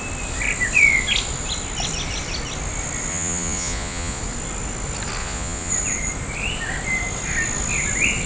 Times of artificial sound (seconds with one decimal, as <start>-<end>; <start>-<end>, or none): 3.1-4.2; 5.2-5.7